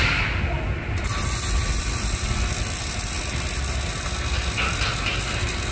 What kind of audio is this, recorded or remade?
recorded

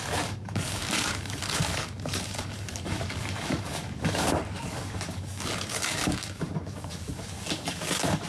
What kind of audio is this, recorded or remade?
remade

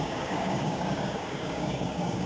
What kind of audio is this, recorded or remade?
remade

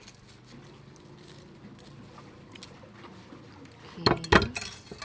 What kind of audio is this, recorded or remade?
recorded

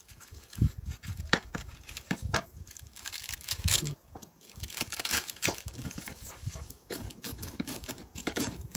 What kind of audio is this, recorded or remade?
remade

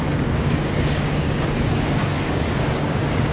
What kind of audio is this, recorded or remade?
remade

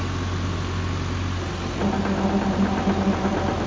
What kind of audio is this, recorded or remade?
recorded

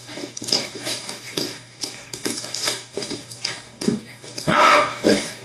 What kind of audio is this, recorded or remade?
remade